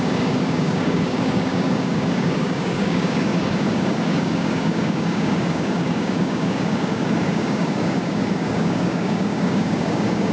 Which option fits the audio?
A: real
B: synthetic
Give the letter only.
B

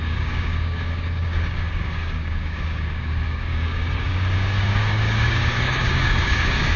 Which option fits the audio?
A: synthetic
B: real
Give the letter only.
A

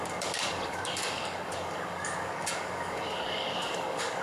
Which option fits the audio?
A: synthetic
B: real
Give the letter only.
A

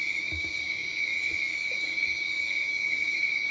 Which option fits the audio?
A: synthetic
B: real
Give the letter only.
A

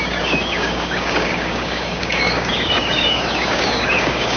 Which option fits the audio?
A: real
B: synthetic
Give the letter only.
B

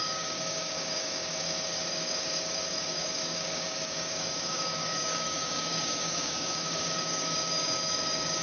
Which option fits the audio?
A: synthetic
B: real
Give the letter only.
A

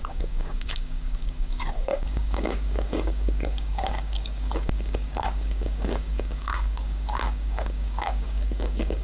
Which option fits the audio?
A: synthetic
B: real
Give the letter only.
A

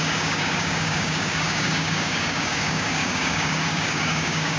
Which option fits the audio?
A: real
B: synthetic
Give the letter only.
B